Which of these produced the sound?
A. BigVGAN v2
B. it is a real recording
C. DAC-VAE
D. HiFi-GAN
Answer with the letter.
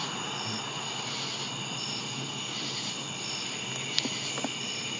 B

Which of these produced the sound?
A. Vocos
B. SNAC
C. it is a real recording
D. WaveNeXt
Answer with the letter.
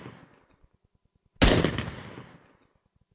C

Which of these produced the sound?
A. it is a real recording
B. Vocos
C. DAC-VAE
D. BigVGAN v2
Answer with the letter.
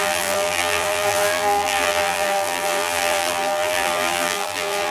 D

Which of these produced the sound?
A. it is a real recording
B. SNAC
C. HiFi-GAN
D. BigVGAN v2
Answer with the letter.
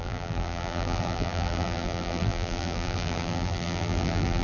D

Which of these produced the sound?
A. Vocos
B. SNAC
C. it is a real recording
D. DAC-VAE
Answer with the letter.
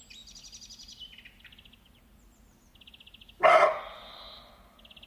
C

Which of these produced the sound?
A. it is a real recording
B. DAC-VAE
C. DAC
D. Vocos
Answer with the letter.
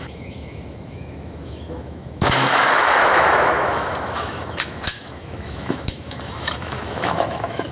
B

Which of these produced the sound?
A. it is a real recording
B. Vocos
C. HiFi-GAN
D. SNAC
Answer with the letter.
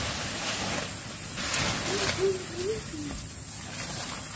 A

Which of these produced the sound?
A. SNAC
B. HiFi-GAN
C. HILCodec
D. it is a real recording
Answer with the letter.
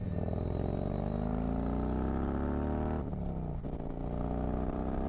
D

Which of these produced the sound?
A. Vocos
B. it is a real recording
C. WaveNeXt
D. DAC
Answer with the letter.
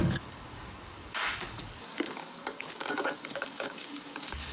D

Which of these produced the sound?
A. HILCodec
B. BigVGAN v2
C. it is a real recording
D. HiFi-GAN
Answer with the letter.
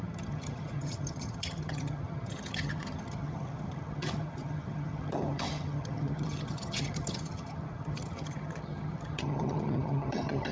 D